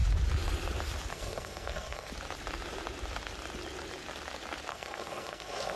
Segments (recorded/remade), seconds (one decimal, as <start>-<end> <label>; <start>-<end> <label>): 0.0-1.1 recorded; 1.1-2.1 remade; 2.1-4.7 recorded; 4.7-5.8 remade